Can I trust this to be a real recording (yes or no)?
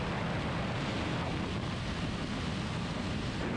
yes